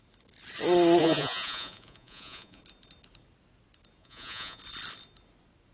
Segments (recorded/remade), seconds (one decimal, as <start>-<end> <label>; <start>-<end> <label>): 0.0-1.0 recorded; 1.0-2.6 remade; 2.6-4.0 recorded; 4.0-4.6 remade; 4.6-5.7 recorded